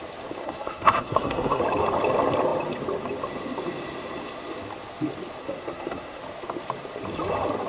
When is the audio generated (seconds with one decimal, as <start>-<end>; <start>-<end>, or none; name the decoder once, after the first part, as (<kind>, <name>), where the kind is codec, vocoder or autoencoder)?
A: 0.4-1.6 (codec, SNAC); 5.4-6.2